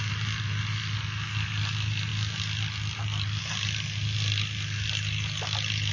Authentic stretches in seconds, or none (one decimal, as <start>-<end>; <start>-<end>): 0.0-5.9